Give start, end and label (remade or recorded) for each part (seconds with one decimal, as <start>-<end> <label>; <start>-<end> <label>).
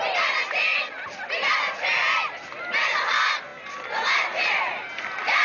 0.0-5.4 recorded